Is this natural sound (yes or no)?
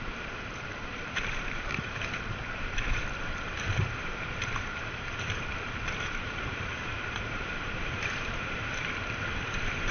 no